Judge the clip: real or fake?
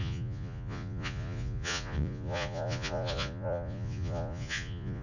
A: fake